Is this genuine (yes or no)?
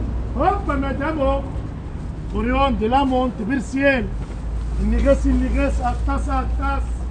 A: yes